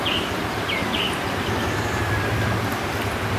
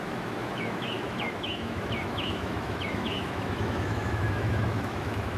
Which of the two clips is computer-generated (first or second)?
second